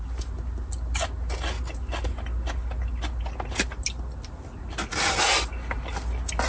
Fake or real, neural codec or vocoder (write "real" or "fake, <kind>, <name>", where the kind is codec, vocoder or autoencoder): real